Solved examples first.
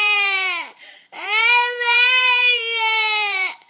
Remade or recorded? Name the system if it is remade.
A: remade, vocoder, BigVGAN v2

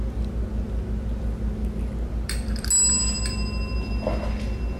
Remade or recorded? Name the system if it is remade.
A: recorded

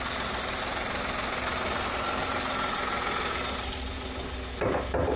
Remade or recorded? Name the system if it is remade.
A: recorded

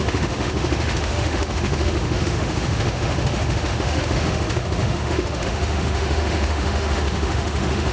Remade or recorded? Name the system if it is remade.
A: remade, autoencoder, DAC-VAE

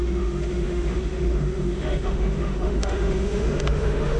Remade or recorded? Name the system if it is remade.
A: remade, autoencoder, DAC-VAE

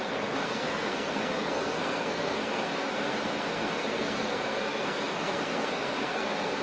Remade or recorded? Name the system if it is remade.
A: remade, codec, SNAC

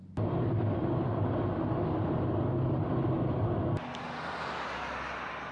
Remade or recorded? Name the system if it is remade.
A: recorded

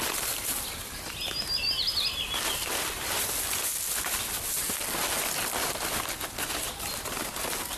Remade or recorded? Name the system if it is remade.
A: recorded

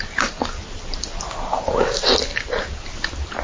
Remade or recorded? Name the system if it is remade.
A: recorded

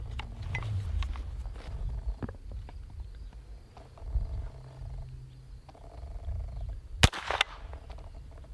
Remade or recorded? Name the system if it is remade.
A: recorded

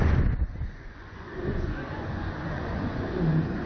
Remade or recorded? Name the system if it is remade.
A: remade, vocoder, Vocos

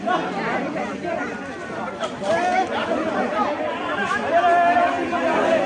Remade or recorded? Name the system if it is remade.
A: recorded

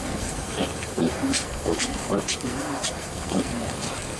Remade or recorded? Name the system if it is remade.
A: remade, codec, SNAC